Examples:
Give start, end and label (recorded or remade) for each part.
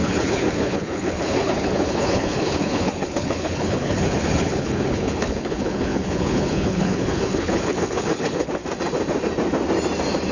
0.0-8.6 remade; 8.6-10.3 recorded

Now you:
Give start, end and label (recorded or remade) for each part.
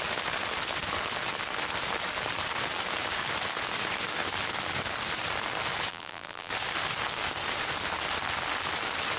0.0-5.9 recorded; 5.9-6.5 remade; 6.5-9.2 recorded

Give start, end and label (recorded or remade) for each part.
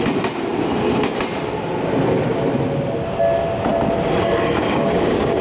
0.0-4.6 recorded; 4.6-5.4 remade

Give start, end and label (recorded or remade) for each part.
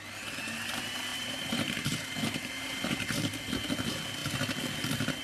0.0-1.1 recorded; 1.1-3.4 remade; 3.4-5.2 recorded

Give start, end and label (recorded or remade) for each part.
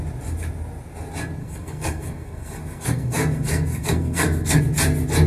0.0-1.4 recorded; 1.4-4.6 remade; 4.6-5.3 recorded